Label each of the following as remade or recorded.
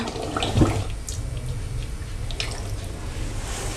recorded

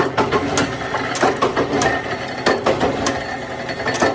recorded